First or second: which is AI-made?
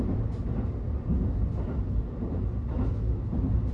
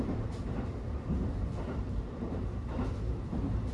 second